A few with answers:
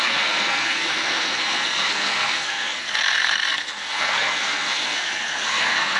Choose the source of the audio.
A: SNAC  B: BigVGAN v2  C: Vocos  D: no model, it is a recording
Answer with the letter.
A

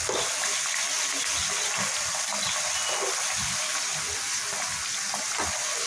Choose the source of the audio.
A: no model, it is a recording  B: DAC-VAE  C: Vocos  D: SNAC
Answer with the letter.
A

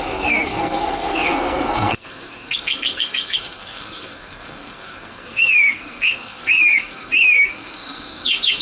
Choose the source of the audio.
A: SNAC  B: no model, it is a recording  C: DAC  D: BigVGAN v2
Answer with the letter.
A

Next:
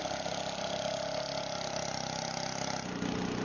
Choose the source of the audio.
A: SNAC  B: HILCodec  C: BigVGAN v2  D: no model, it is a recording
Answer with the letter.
D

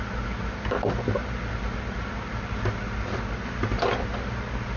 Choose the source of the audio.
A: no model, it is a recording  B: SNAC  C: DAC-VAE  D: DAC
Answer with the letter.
A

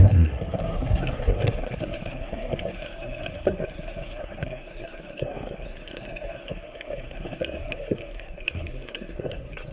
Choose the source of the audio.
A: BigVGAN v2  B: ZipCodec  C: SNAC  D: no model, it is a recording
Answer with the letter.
C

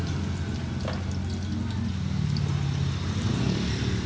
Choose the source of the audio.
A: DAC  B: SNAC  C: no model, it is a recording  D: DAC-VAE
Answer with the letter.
C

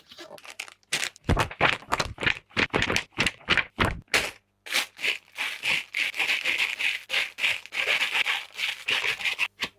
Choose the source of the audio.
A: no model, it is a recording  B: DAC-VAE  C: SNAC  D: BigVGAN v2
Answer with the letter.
A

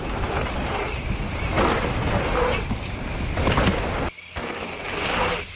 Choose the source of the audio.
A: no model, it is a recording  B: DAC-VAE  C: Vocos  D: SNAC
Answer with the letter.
A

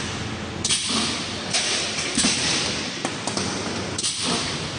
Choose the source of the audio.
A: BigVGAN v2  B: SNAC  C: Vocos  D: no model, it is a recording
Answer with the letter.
D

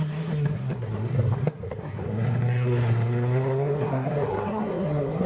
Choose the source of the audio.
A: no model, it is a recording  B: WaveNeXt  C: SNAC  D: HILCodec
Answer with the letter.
C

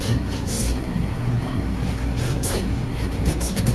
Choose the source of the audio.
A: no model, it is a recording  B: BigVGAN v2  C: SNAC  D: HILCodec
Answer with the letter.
C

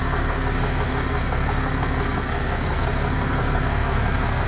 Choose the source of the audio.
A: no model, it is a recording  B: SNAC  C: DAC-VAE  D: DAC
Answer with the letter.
B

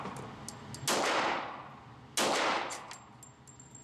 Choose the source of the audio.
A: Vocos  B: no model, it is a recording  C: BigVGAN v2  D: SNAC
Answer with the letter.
B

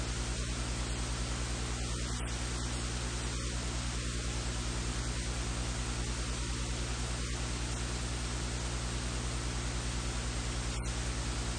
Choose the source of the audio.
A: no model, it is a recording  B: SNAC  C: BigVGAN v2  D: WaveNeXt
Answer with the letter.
A